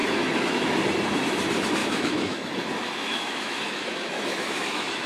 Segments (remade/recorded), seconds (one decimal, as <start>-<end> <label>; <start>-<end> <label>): 0.0-0.7 remade; 0.7-1.8 recorded; 1.8-5.1 remade